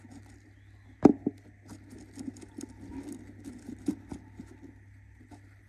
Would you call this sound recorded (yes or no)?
yes